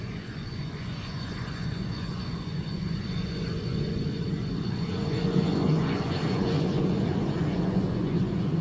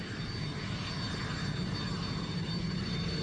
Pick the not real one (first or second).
first